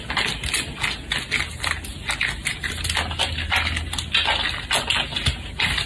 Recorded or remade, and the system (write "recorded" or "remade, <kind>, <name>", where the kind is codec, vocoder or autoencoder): recorded